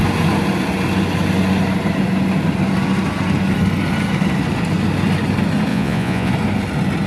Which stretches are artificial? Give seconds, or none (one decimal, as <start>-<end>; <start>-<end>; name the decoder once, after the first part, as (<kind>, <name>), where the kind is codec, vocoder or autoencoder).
5.7-6.3 (vocoder, Vocos)